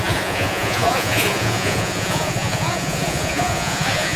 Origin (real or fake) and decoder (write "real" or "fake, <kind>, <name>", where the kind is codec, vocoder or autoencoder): fake, vocoder, Vocos